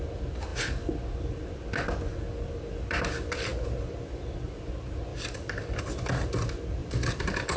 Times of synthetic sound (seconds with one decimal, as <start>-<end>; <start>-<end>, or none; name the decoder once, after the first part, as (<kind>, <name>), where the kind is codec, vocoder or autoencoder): 5.1-5.8 (vocoder, BigVGAN v2); 6.8-7.6